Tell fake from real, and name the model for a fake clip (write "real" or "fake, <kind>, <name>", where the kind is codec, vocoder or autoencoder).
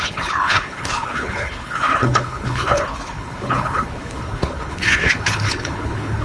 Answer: fake, codec, HILCodec